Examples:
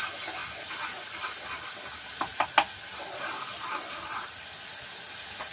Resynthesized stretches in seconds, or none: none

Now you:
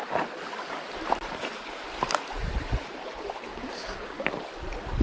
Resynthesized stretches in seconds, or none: 3.5-4.3 (codec, DAC)

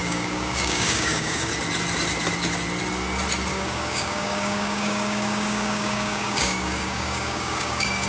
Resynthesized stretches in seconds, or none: 0.0-1.5 (codec, DAC); 3.5-8.1

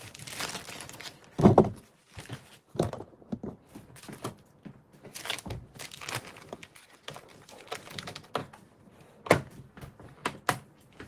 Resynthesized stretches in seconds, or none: none

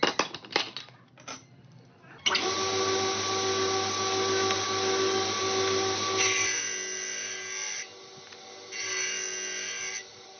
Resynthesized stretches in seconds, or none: none